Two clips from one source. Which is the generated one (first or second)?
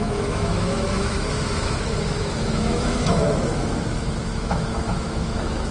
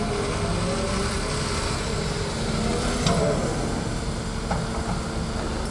first